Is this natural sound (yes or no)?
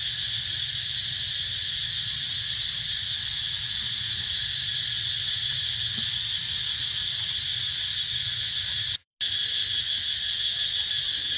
yes